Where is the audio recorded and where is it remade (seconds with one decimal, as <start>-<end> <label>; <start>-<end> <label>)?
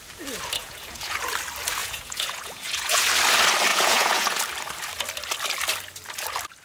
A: 0.0-0.6 recorded; 0.6-1.2 remade; 1.2-1.8 recorded; 1.8-3.0 remade; 3.0-3.7 recorded; 3.7-4.4 remade; 4.4-6.6 recorded